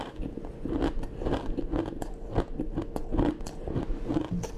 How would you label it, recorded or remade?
recorded